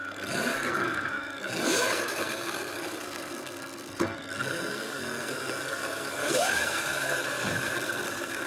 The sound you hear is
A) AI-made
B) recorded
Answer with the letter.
A